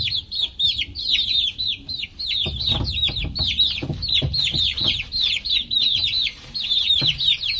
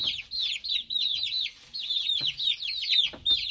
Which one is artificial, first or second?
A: first